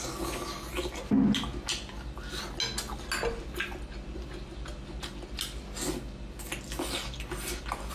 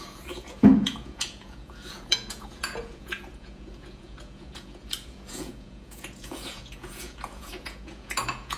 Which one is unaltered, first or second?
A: first